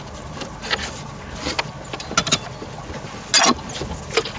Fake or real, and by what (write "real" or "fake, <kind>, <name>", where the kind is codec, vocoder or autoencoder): real